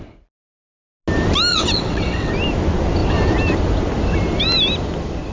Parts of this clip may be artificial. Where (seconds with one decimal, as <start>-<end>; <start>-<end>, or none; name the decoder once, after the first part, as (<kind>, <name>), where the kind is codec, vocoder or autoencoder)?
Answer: 1.5-2.3 (vocoder, WaveNeXt)